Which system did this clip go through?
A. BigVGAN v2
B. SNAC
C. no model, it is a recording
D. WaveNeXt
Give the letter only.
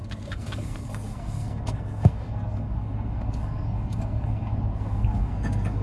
B